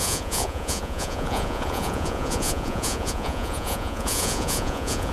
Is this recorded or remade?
remade